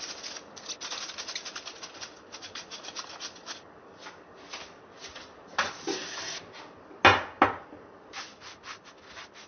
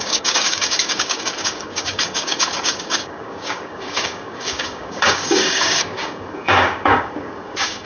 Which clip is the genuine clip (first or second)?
first